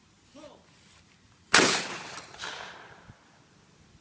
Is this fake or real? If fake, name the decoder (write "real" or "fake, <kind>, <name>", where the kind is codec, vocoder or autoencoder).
real